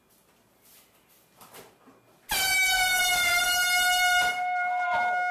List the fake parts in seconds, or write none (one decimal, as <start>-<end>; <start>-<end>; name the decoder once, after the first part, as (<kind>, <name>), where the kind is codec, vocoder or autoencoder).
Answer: none